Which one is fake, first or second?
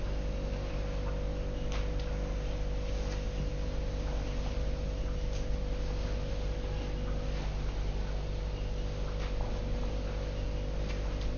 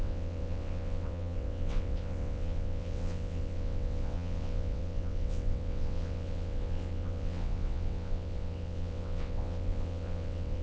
second